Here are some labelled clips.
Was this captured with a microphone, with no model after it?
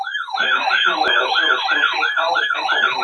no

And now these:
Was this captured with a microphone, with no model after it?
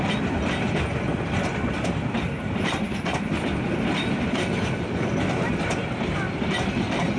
yes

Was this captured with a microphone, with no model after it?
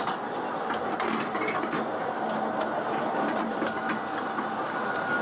yes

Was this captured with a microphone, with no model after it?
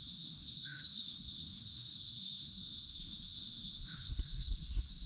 no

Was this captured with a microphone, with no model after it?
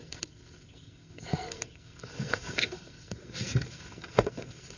no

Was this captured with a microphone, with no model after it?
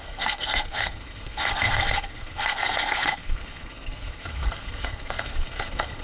no